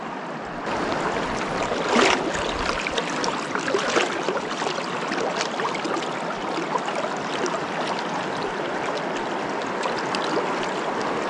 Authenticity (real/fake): real